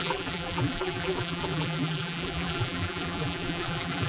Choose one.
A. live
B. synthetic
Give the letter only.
B